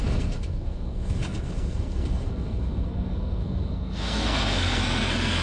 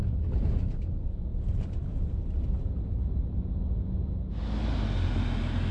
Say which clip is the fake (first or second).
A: first